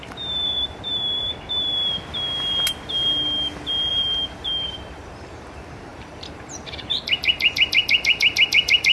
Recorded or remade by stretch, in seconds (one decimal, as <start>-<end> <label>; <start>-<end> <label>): 0.0-0.9 remade; 0.9-3.9 recorded; 3.9-8.9 remade

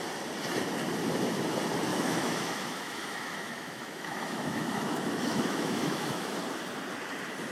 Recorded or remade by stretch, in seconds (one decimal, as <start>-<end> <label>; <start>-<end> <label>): 0.0-1.9 recorded; 1.9-6.4 remade; 6.4-7.5 recorded